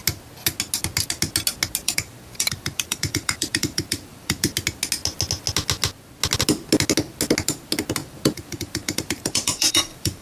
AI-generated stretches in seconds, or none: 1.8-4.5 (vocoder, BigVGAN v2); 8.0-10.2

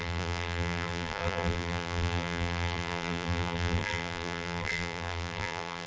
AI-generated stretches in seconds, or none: 0.0-5.9 (vocoder, BigVGAN v2)

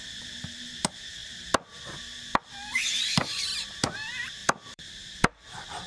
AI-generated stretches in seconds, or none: 2.7-3.4 (vocoder, BigVGAN v2); 4.4-5.9

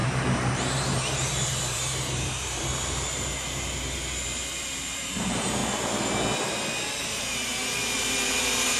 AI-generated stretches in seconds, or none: 0.0-5.6 (vocoder, BigVGAN v2); 7.0-8.8

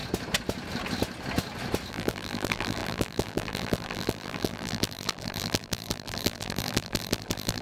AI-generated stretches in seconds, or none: 1.9-7.6 (vocoder, BigVGAN v2)

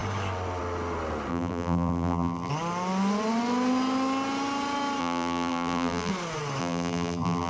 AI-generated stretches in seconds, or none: 1.3-2.5 (vocoder, BigVGAN v2); 5.0-6.1; 6.6-7.5

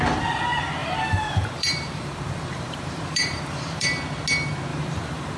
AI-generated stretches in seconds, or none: 0.8-4.0 (vocoder, BigVGAN v2); 4.7-5.4

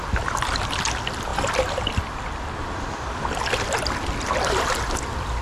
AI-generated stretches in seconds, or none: 0.0-5.4 (vocoder, BigVGAN v2)